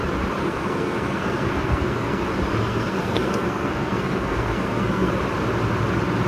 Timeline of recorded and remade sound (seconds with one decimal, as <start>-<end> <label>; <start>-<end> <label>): 0.0-0.4 recorded; 0.4-2.2 remade; 2.2-2.6 recorded; 2.6-5.2 remade; 5.2-6.3 recorded